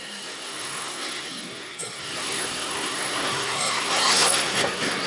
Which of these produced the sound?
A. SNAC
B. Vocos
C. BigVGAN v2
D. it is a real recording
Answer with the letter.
A